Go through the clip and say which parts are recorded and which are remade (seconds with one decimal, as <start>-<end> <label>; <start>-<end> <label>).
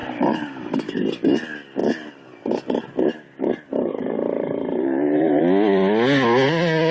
0.0-0.7 remade; 0.7-1.8 recorded; 1.8-5.4 remade; 5.4-6.9 recorded